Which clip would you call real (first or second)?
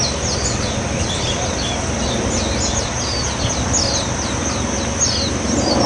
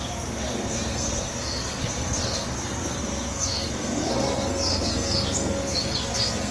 first